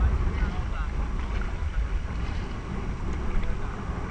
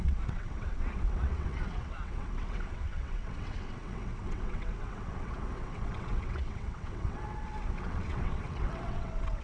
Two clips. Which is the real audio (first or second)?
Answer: first